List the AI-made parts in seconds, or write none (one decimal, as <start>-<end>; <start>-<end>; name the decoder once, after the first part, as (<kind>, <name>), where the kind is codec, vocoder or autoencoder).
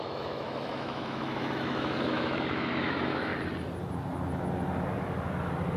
0.0-3.3 (autoencoder, DAC-VAE)